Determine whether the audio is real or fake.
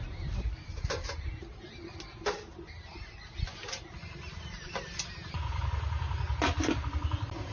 real